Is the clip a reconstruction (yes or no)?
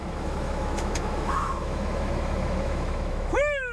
yes